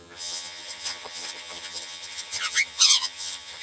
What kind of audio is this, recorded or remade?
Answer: remade